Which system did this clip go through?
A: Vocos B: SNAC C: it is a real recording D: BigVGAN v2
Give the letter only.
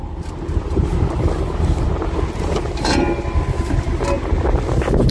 C